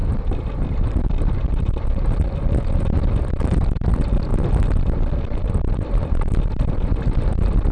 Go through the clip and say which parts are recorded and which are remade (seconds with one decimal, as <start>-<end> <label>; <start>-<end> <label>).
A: 0.0-3.5 recorded; 3.5-4.3 remade; 4.3-5.5 recorded; 5.5-7.7 remade